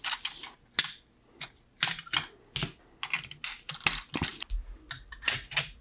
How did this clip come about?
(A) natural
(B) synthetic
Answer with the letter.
A